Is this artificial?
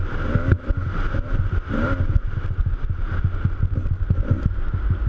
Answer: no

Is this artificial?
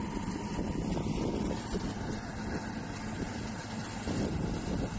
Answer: no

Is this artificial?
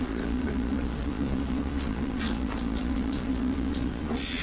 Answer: yes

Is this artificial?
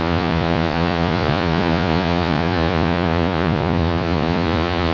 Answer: yes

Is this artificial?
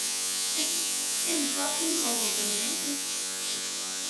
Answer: yes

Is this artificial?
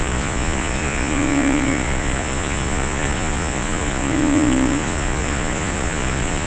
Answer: yes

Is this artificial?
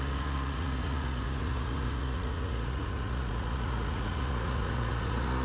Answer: yes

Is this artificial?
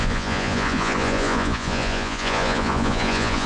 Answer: yes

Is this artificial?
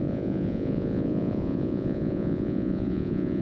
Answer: yes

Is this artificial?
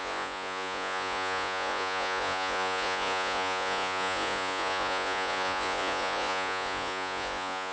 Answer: yes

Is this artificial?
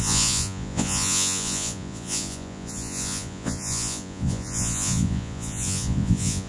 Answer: yes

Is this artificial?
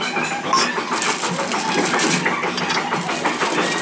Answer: no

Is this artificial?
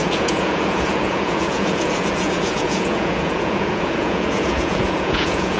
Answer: yes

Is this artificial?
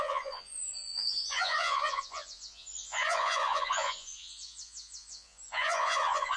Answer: yes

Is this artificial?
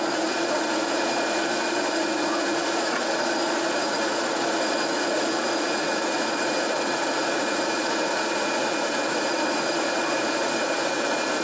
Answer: yes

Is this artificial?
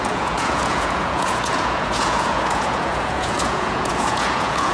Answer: yes